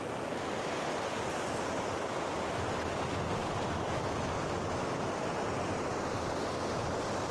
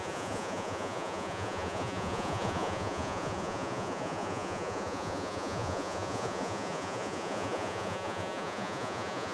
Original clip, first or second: first